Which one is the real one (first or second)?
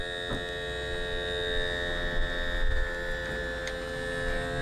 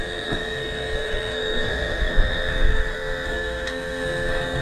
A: first